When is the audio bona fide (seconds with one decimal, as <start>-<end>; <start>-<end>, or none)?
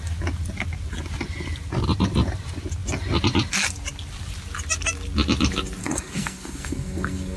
0.0-5.8